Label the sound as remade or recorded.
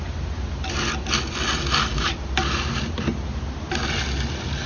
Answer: recorded